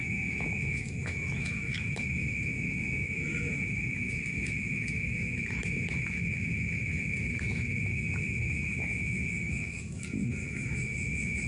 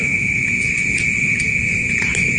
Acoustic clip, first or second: second